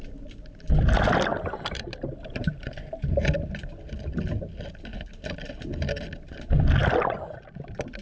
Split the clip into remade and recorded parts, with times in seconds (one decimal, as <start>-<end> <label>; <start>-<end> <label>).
0.0-1.3 recorded; 1.3-3.3 remade; 3.3-8.0 recorded